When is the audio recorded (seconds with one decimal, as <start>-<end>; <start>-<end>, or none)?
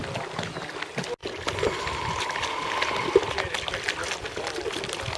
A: 0.0-5.2